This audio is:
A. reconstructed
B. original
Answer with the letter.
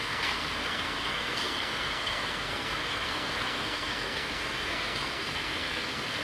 A